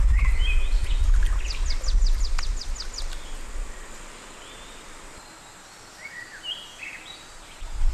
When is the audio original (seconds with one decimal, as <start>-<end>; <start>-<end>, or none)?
0.0-7.9